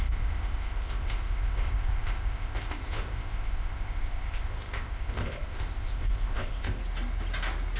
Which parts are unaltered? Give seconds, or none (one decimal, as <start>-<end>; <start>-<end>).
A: 6.8-7.8